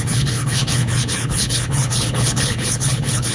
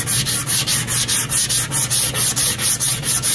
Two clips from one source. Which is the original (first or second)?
second